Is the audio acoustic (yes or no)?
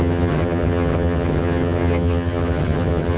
no